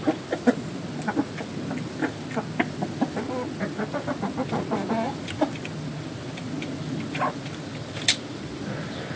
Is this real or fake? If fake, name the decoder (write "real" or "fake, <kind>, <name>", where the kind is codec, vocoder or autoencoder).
real